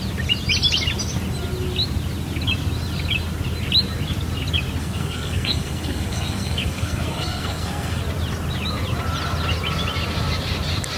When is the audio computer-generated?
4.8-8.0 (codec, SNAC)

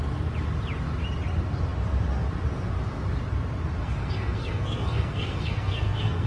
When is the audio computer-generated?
3.8-6.3 (codec, SNAC)

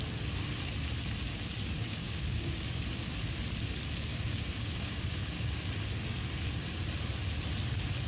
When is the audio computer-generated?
1.8-2.8 (codec, DAC); 4.1-5.6

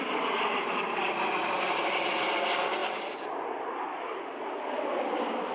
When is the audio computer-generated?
none

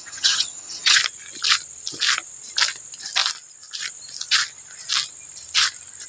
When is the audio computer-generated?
0.0-1.0 (vocoder, HiFi-GAN)

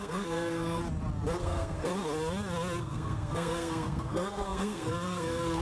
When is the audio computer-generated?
0.0-0.8 (codec, SNAC); 1.4-1.9; 2.8-5.6

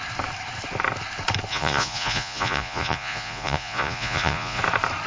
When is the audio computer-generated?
1.5-4.6 (vocoder, Vocos)